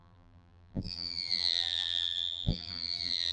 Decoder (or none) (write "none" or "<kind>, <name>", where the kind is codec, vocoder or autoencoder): vocoder, BigVGAN v2